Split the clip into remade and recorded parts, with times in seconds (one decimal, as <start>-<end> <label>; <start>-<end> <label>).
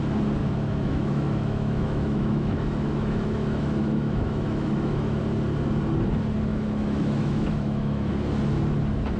0.0-0.4 recorded; 0.4-5.2 remade; 5.2-6.5 recorded; 6.5-8.1 remade; 8.1-9.2 recorded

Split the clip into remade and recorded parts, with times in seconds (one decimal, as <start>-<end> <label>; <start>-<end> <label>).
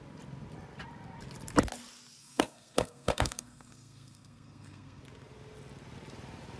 0.0-2.2 recorded; 2.2-5.0 remade; 5.0-6.6 recorded